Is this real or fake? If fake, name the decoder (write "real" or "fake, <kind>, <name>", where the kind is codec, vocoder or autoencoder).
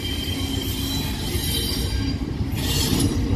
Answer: real